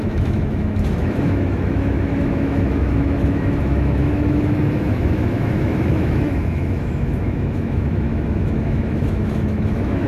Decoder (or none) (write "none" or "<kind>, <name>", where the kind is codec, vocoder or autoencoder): autoencoder, DAC-VAE